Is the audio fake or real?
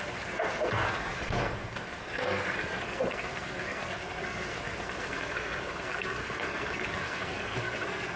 fake